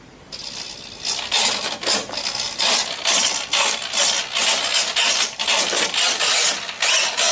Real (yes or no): yes